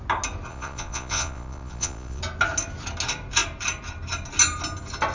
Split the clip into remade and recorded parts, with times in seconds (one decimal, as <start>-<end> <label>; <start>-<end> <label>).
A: 0.0-0.5 recorded; 0.5-2.2 remade; 2.2-5.1 recorded